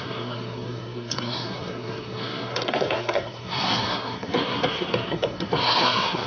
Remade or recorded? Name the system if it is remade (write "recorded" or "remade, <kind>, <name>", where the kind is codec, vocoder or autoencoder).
remade, codec, SNAC